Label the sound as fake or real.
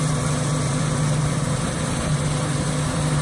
fake